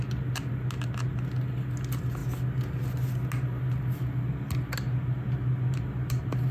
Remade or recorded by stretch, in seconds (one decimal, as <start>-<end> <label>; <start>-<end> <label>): 0.0-6.5 recorded